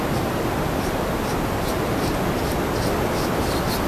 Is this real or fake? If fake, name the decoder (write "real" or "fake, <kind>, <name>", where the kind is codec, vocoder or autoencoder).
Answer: real